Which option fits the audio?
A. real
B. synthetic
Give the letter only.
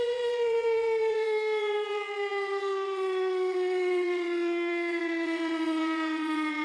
B